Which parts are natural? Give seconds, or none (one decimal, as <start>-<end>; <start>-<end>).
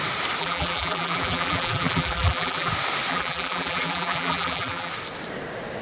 0.0-0.4; 2.7-3.1; 4.9-5.8